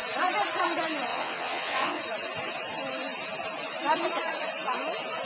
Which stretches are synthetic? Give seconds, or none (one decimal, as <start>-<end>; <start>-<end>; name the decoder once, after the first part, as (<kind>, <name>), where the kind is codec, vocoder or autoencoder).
1.1-2.0 (vocoder, WaveNeXt)